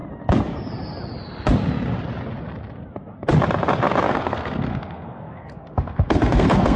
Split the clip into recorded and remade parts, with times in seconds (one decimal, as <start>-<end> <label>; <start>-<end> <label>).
0.0-4.1 recorded; 4.1-6.8 remade